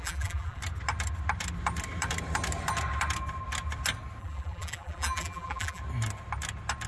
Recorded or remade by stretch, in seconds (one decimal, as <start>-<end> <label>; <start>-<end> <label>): 0.0-0.6 remade; 0.6-4.2 recorded; 4.2-5.8 remade; 5.8-6.9 recorded

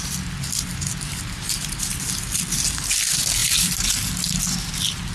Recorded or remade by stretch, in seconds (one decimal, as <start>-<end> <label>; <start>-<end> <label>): 0.0-0.7 recorded; 0.7-1.7 remade; 1.7-3.4 recorded; 3.4-4.1 remade; 4.1-5.1 recorded